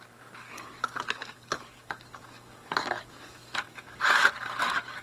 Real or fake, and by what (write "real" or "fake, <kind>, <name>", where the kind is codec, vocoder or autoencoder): fake, codec, DAC